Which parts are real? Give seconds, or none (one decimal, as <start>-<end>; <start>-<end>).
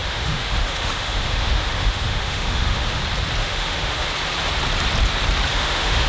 3.0-3.4; 4.1-5.5